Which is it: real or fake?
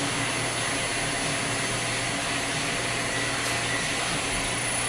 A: real